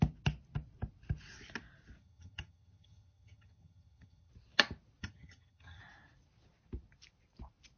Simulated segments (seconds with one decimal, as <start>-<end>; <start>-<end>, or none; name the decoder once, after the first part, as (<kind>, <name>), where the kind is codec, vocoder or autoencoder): 2.0-4.3 (vocoder, HiFi-GAN); 5.0-5.8